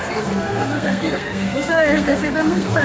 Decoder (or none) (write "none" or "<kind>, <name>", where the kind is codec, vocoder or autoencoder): codec, SNAC